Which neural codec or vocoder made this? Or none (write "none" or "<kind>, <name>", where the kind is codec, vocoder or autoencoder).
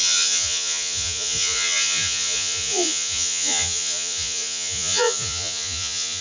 vocoder, Vocos